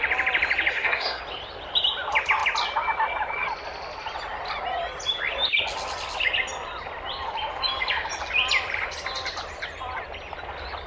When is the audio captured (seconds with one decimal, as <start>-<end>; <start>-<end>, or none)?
0.0-0.7; 1.2-10.9